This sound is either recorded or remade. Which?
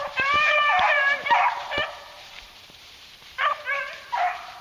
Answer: remade